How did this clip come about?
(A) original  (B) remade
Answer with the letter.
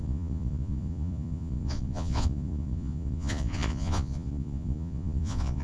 B